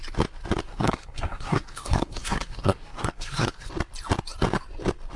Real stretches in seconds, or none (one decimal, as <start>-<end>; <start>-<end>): 0.0-0.6; 3.7-5.2